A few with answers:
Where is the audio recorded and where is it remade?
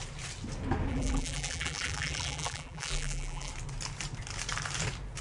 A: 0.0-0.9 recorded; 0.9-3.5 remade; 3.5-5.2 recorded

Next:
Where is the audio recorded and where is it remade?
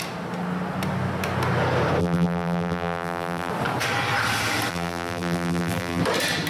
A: 0.0-2.0 recorded; 2.0-3.5 remade; 3.5-4.7 recorded; 4.7-6.0 remade; 6.0-6.5 recorded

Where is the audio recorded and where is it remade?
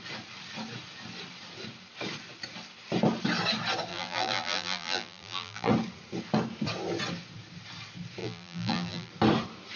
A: 0.0-3.9 recorded; 3.9-5.7 remade; 5.7-8.2 recorded; 8.2-9.1 remade; 9.1-9.8 recorded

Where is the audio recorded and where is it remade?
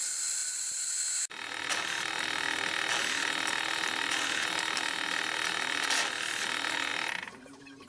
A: 0.0-7.9 recorded